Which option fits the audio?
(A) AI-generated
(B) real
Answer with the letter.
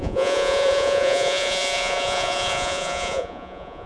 A